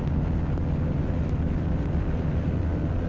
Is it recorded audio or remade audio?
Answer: recorded